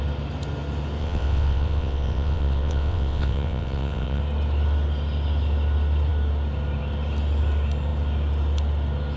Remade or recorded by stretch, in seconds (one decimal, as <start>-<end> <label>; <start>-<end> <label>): 0.0-1.0 recorded; 1.0-4.2 remade; 4.2-9.2 recorded